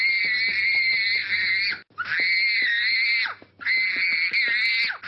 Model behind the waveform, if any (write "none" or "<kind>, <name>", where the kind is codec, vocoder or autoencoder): none